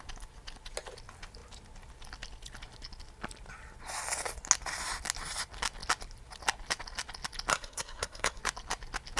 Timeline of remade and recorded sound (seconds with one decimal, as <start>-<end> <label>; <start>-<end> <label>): 0.0-7.5 recorded; 7.5-8.4 remade; 8.4-9.2 recorded